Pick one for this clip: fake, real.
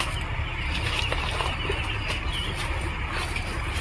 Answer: real